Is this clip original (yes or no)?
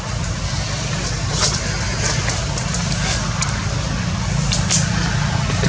yes